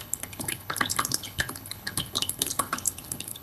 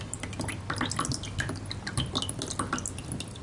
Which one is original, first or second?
second